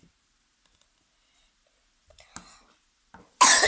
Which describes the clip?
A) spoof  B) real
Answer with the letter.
B